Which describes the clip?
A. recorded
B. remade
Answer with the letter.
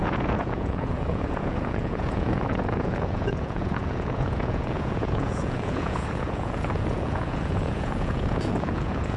B